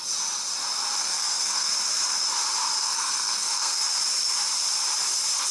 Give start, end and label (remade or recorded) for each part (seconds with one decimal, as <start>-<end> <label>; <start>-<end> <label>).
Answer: 0.0-1.0 recorded; 1.0-1.7 remade; 1.7-2.8 recorded; 2.8-3.8 remade; 3.8-5.5 recorded